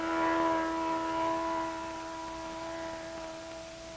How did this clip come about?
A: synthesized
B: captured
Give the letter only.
B